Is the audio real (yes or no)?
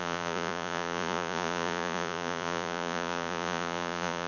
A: no